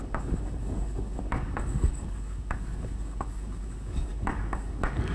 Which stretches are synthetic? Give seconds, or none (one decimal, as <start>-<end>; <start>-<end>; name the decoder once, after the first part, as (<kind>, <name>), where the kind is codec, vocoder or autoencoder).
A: 0.0-5.1 (codec, DAC)